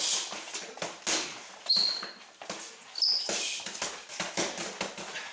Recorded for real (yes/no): yes